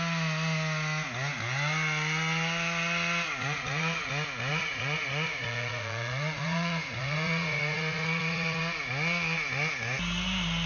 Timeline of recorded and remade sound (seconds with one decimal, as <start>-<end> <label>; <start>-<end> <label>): 0.0-3.4 recorded; 3.4-4.1 remade; 4.1-4.5 recorded; 4.5-8.6 remade; 8.6-10.7 recorded